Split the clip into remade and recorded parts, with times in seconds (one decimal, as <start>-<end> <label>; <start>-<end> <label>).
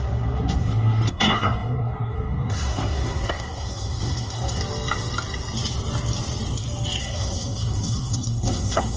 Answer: 0.0-4.6 remade; 4.6-7.0 recorded; 7.0-9.0 remade